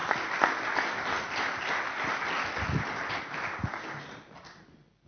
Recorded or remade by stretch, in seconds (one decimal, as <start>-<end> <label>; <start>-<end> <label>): 0.0-5.1 recorded